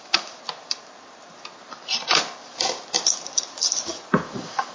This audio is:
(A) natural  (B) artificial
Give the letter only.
B